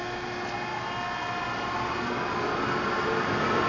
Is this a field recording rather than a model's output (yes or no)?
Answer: yes